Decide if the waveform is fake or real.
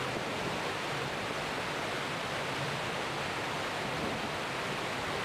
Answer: real